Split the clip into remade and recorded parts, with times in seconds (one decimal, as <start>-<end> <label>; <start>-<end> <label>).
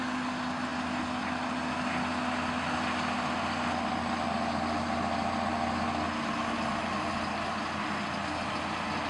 0.0-9.1 recorded